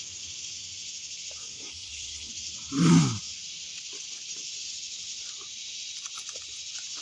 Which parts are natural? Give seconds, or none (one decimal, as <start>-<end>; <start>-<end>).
0.0-1.4; 2.3-7.0